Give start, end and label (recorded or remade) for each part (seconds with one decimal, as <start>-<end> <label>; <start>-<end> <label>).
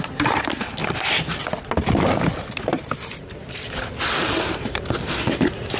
0.0-0.8 remade; 0.8-4.3 recorded; 4.3-5.8 remade